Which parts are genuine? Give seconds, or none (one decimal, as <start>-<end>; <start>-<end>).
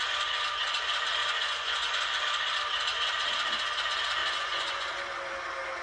0.0-1.2; 1.9-4.2; 4.9-5.8